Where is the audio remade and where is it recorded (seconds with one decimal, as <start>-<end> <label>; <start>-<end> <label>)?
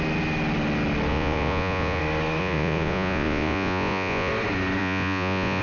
0.0-1.1 recorded; 1.1-2.0 remade; 2.0-2.4 recorded; 2.4-4.3 remade; 4.3-4.8 recorded; 4.8-5.6 remade